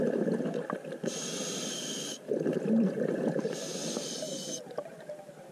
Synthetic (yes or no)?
no